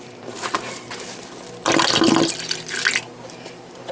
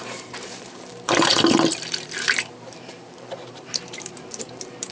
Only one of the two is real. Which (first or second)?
first